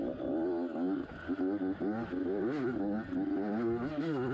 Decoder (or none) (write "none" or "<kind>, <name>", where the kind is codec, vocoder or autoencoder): none